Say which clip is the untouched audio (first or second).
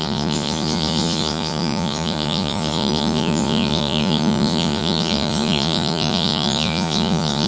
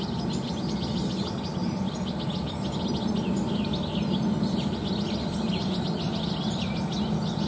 second